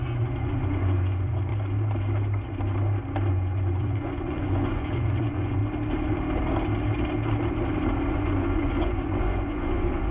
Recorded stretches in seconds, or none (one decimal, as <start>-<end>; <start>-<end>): 1.5-3.3; 5.6-8.1